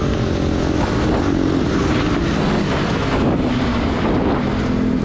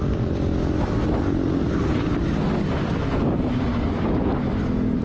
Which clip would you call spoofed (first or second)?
second